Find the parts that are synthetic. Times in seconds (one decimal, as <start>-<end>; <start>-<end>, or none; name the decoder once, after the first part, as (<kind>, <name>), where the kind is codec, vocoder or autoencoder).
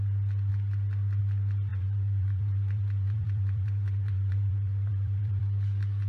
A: 1.7-5.4 (vocoder, BigVGAN v2)